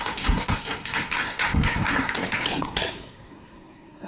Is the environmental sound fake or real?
fake